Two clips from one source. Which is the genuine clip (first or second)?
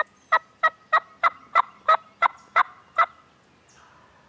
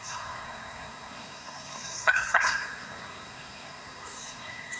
first